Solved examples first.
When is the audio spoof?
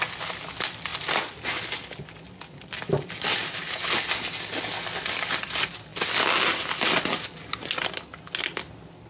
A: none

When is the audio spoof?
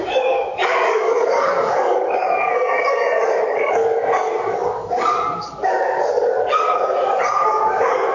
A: 0.0-8.1 (codec, DAC)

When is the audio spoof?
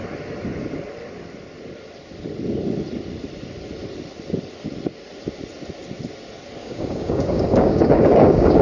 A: 6.6-8.6 (codec, DAC)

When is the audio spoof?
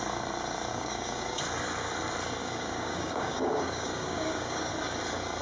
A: 0.7-1.4 (codec, DAC); 2.4-4.7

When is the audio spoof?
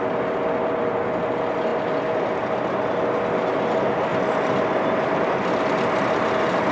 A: none